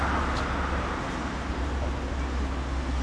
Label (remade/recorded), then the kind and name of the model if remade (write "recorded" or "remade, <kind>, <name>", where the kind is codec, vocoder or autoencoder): recorded